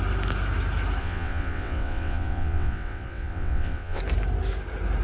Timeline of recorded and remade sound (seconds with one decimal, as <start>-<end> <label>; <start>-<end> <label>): 0.0-1.0 recorded; 1.0-4.0 remade; 4.0-5.0 recorded